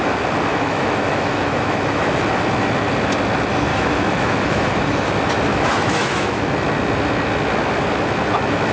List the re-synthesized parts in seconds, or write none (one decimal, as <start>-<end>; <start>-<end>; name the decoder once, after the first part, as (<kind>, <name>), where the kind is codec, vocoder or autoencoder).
0.5-2.1 (autoencoder, DAC-VAE); 3.7-5.1; 5.5-6.4